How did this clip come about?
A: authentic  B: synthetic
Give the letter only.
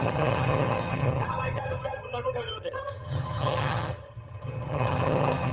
B